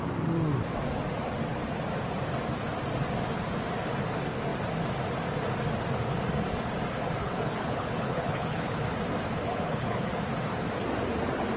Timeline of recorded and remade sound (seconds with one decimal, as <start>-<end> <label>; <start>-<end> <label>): 0.0-7.2 recorded; 7.2-8.8 remade; 8.8-9.4 recorded; 9.4-10.1 remade; 10.1-11.6 recorded